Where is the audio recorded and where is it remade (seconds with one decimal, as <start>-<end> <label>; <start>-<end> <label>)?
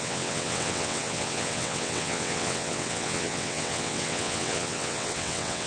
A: 0.0-5.7 remade